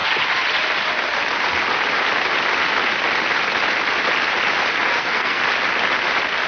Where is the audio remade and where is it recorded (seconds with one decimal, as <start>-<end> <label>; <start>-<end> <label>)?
0.0-4.9 recorded; 4.9-5.4 remade; 5.4-6.5 recorded

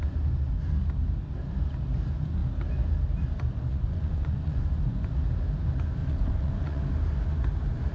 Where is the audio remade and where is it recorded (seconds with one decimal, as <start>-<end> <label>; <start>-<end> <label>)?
0.0-3.7 recorded; 3.7-5.1 remade; 5.1-6.0 recorded; 6.0-6.8 remade; 6.8-7.9 recorded

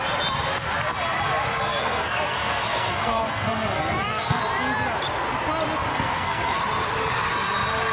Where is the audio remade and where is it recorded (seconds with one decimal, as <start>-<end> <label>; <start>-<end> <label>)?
0.0-1.7 recorded; 1.7-4.4 remade; 4.4-5.9 recorded; 5.9-6.6 remade; 6.6-7.9 recorded

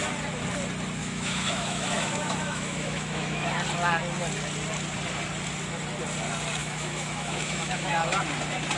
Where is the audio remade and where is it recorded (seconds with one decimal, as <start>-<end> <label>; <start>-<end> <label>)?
0.0-1.0 recorded; 1.0-3.5 remade; 3.5-6.6 recorded; 6.6-8.2 remade; 8.2-8.8 recorded

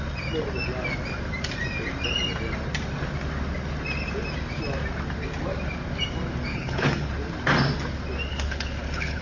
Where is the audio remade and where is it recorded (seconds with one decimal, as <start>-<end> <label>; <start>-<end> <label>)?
0.0-6.5 recorded; 6.5-7.1 remade; 7.1-8.3 recorded; 8.3-9.2 remade

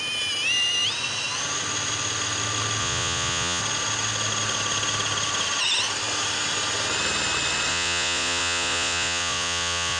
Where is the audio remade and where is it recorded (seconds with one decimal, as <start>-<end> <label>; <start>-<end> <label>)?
0.0-2.8 recorded; 2.8-3.6 remade; 3.6-7.7 recorded; 7.7-10.0 remade